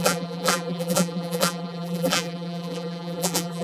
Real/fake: fake